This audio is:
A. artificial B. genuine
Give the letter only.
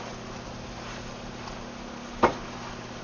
B